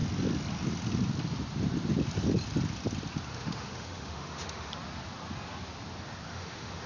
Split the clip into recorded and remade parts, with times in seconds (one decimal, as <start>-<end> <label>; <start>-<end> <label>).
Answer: 0.0-3.3 recorded; 3.3-4.7 remade; 4.7-6.3 recorded; 6.3-6.9 remade